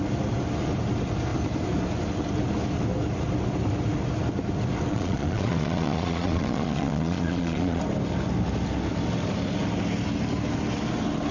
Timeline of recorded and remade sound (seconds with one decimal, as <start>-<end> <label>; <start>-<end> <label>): 0.0-4.9 recorded; 4.9-7.8 remade; 7.8-11.3 recorded